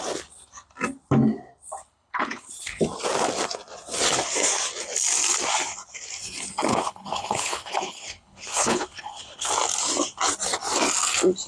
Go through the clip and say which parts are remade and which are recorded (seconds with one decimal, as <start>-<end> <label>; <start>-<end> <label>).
0.0-1.8 recorded; 1.8-2.8 remade; 2.8-6.7 recorded; 6.7-9.5 remade; 9.5-11.5 recorded